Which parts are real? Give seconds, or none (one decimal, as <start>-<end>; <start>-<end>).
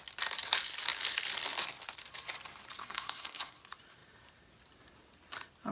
0.0-2.8; 3.6-5.7